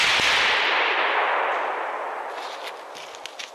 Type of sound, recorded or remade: recorded